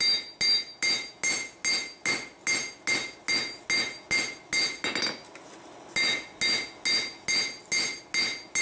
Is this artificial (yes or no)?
no